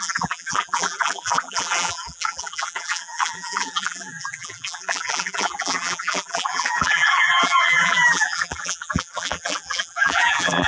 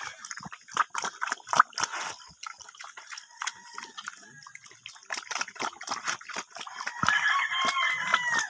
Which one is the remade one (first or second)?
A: first